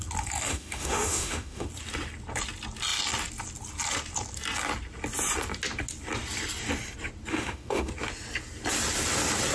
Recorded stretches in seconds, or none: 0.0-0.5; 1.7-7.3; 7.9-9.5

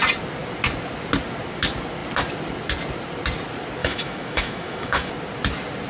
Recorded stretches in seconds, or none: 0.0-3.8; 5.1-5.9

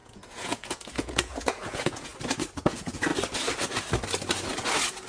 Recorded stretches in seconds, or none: 2.1-2.6; 3.1-5.1